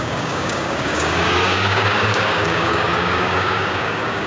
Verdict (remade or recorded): remade